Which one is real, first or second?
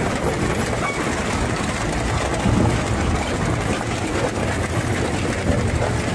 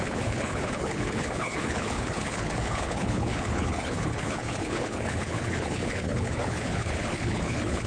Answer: first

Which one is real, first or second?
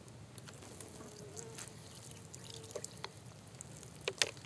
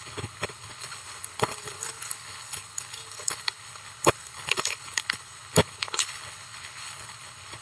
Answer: first